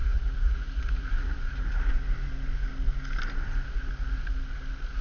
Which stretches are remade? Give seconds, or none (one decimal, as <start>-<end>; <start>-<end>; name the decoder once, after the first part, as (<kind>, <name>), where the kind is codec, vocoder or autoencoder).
0.0-1.9 (vocoder, Vocos)